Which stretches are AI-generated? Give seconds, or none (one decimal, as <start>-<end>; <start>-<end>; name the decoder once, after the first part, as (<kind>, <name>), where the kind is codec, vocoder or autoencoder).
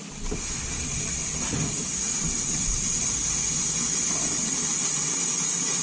none